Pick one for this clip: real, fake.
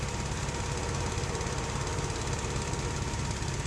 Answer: real